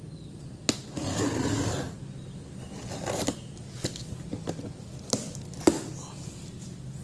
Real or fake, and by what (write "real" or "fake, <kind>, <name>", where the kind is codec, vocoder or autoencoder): real